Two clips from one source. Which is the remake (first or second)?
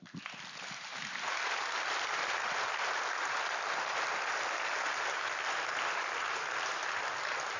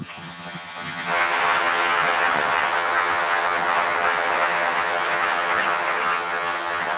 second